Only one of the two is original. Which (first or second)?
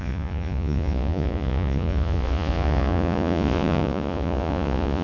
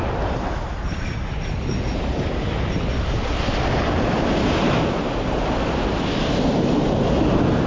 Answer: second